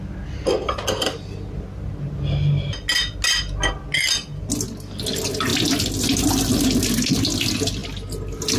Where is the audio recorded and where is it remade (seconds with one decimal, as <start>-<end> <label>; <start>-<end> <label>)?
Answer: 0.0-8.6 recorded